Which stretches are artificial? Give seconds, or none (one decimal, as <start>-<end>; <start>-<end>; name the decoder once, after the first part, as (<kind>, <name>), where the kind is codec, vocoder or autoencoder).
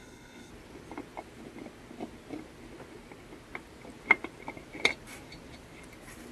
0.0-0.5 (codec, HILCodec)